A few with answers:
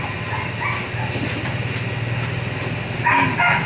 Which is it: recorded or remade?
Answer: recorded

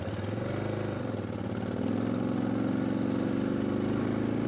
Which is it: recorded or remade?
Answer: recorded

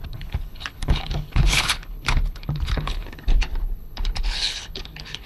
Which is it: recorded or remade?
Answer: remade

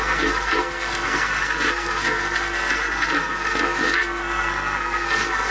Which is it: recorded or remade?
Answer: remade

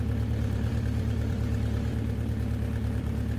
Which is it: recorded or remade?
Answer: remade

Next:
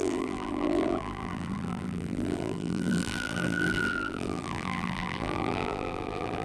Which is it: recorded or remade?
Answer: remade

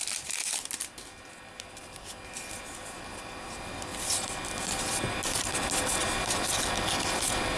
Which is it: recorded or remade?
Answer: recorded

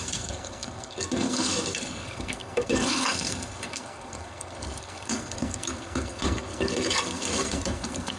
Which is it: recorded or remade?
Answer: remade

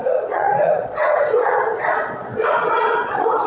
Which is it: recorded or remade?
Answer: remade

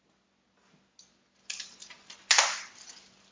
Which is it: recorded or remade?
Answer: recorded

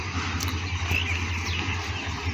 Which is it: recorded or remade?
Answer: recorded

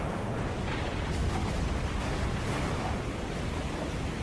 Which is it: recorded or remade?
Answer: recorded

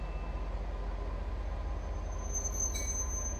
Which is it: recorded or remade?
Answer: recorded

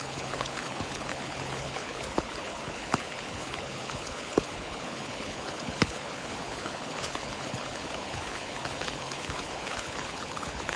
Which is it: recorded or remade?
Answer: remade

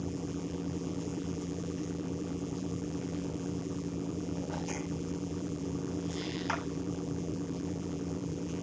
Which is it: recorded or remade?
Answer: remade